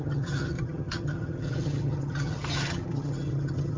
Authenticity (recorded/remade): remade